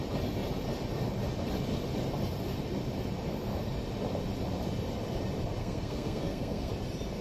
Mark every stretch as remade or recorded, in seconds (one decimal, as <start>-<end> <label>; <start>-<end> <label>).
0.0-5.6 recorded; 5.6-6.7 remade; 6.7-7.2 recorded